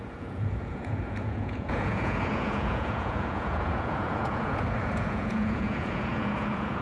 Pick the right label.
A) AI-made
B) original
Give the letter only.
A